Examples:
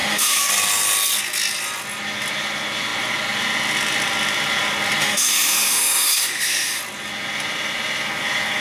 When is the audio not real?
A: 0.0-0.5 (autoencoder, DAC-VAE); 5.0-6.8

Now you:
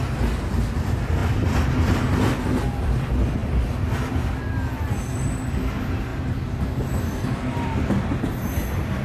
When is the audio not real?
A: none

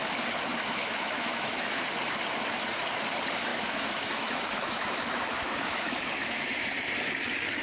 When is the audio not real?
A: 0.5-1.8 (autoencoder, DAC-VAE); 3.5-6.7